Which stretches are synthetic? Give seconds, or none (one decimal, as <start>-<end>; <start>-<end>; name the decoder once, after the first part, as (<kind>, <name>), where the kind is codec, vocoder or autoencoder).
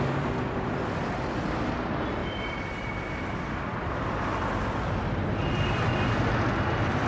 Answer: 2.2-6.1 (vocoder, BigVGAN v2)